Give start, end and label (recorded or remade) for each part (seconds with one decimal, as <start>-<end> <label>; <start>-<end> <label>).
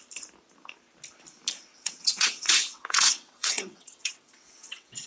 0.0-1.7 recorded; 1.7-5.1 remade